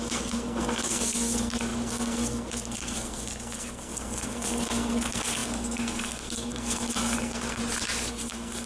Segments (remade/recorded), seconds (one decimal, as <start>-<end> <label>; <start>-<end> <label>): 0.0-7.6 remade; 7.6-8.1 recorded; 8.1-8.7 remade